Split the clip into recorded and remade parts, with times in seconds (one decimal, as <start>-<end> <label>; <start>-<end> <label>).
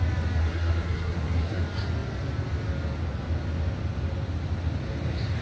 0.0-0.4 recorded; 0.4-1.6 remade; 1.6-5.4 recorded